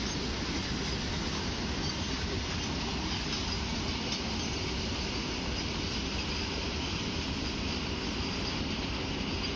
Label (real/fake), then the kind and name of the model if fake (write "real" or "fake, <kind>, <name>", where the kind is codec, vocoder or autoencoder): real